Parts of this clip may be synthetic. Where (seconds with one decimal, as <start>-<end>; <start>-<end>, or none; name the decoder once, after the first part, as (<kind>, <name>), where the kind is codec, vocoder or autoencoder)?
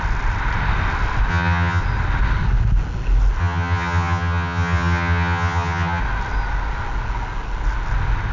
1.3-1.8 (vocoder, HiFi-GAN); 3.4-6.0